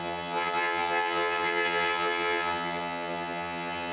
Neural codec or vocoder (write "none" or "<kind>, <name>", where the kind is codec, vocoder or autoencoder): vocoder, HiFi-GAN